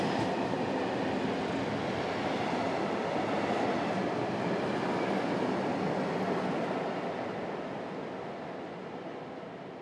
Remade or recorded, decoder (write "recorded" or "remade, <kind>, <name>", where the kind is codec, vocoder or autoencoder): recorded